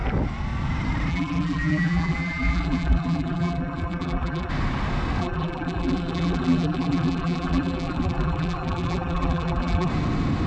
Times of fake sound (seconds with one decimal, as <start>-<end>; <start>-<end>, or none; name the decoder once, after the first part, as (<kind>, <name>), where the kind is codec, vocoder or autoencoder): 1.1-4.5 (vocoder, BigVGAN v2); 5.2-9.9